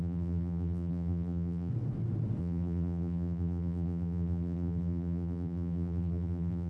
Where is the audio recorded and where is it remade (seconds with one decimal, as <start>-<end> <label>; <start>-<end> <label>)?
0.0-1.7 remade; 1.7-2.4 recorded; 2.4-6.7 remade